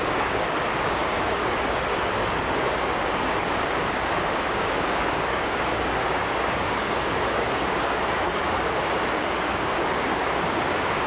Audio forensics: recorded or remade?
remade